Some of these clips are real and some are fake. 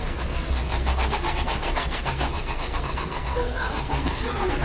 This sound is fake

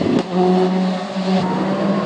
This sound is real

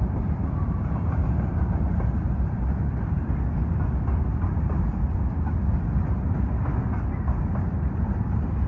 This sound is real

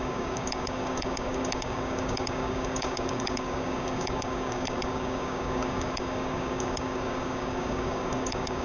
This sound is fake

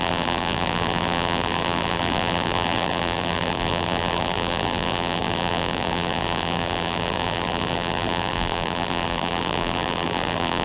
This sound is fake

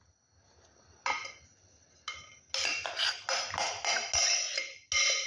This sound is real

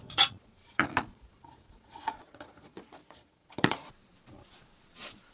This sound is fake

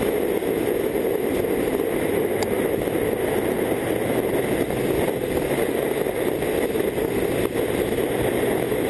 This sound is real